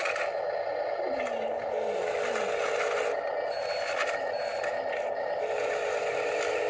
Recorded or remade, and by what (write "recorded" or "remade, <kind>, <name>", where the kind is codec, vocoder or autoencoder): recorded